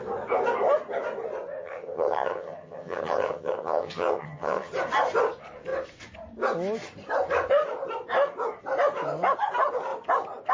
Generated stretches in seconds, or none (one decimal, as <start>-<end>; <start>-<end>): 1.6-4.7